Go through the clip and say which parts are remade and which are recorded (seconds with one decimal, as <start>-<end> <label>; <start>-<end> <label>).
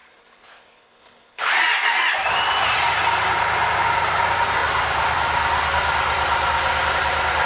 0.0-1.5 remade; 1.5-7.5 recorded